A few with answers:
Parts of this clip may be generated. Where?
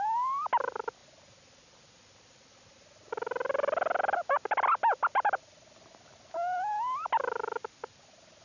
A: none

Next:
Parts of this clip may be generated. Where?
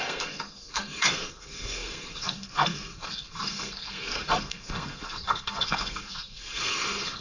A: 0.0-7.2 (codec, SNAC)